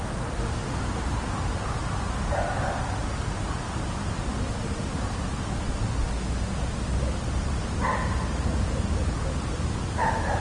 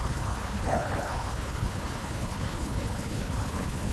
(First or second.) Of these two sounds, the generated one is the second